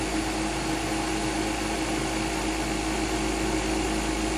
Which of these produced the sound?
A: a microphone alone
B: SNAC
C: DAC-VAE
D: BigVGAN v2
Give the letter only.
A